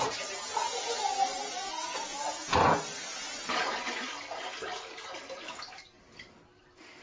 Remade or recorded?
recorded